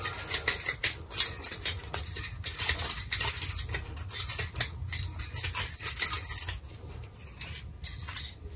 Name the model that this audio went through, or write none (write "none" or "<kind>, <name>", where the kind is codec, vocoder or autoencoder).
none